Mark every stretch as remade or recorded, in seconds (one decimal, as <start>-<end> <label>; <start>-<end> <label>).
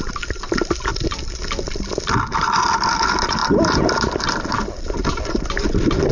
0.0-0.9 recorded; 0.9-1.5 remade; 1.5-6.1 recorded